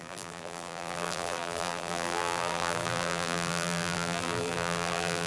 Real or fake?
fake